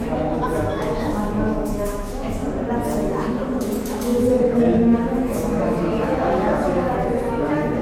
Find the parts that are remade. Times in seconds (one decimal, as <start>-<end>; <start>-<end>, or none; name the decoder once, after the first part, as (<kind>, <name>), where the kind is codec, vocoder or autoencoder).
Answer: 0.0-2.4 (autoencoder, DAC-VAE); 3.1-7.8